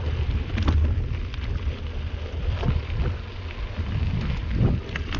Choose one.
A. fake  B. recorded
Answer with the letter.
B